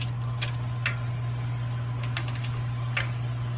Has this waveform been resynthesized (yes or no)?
no